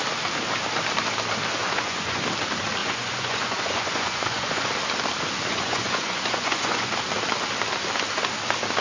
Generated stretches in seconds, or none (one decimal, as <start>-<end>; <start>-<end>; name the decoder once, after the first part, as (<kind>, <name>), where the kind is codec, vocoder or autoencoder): 1.6-2.2 (vocoder, Vocos); 2.8-4.7; 5.5-6.9